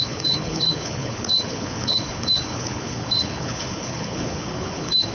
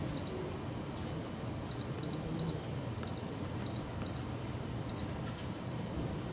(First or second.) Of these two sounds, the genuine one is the second